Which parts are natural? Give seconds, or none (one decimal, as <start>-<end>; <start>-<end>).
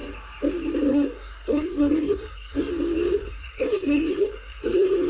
0.0-0.9; 2.7-3.2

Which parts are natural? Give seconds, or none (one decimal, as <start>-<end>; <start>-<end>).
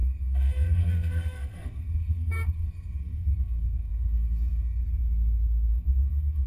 4.8-5.7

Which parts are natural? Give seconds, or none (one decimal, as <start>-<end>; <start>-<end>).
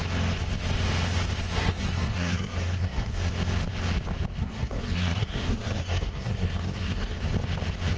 0.0-1.5; 3.3-4.4; 7.2-8.0